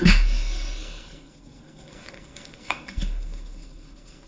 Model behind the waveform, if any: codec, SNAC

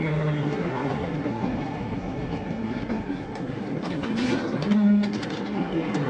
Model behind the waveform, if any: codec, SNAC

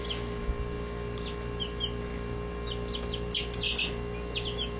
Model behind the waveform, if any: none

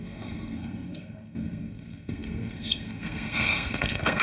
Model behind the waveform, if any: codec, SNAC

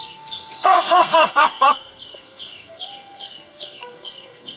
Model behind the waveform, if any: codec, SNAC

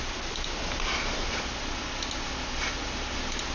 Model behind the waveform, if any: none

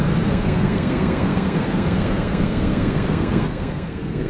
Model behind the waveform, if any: codec, SNAC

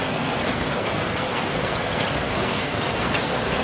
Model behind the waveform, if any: codec, SNAC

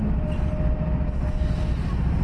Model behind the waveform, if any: none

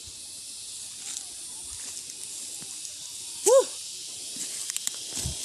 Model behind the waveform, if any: none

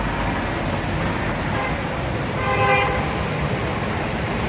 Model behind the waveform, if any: none